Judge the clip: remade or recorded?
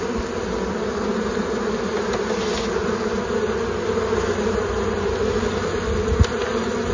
recorded